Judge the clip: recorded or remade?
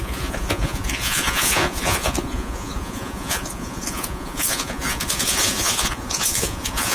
remade